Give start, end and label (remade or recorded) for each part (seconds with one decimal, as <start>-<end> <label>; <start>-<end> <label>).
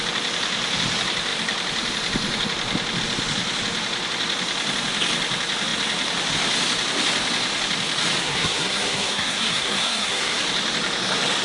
0.0-8.2 recorded; 8.2-10.4 remade; 10.4-11.4 recorded